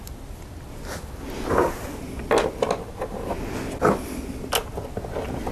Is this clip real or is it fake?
real